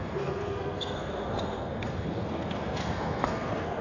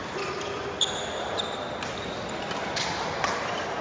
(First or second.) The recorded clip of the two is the second